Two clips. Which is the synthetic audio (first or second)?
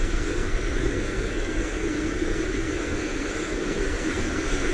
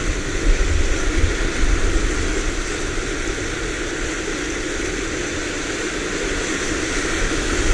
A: first